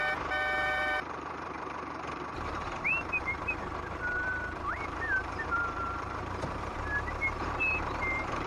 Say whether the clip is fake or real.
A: fake